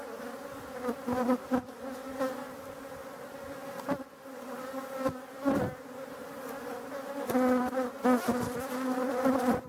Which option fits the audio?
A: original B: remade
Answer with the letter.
A